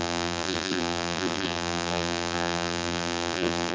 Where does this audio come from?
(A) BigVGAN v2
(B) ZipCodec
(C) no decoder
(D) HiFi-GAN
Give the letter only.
A